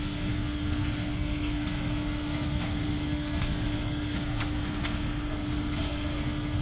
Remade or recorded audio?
remade